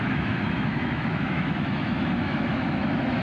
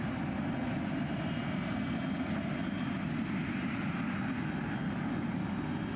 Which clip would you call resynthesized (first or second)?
first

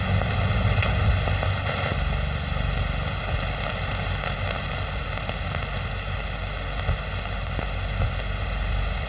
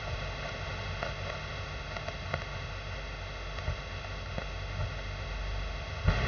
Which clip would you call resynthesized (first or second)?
second